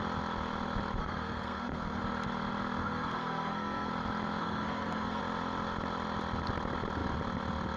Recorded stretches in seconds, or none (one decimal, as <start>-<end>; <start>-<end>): 0.0-1.0; 2.0-2.8; 3.9-4.4; 5.2-7.8